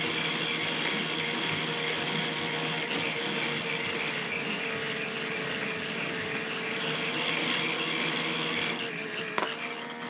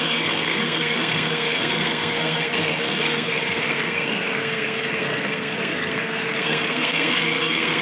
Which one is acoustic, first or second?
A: first